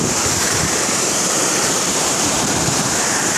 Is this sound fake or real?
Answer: fake